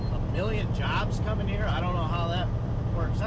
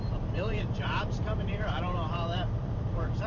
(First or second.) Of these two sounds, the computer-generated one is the second